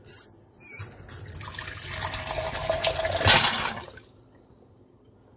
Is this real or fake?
real